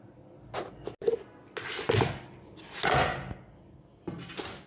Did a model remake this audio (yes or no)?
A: no